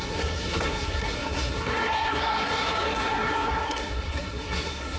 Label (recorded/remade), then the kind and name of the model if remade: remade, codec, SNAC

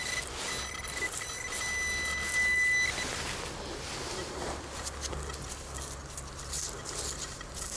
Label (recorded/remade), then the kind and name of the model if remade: recorded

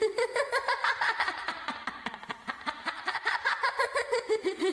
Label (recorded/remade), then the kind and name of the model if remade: recorded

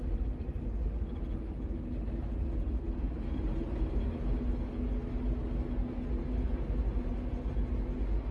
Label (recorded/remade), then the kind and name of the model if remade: recorded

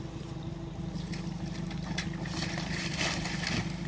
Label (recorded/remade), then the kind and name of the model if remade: recorded